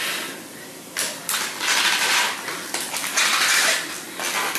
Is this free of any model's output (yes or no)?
yes